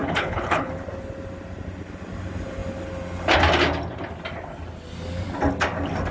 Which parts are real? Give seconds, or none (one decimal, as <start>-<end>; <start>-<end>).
0.7-6.1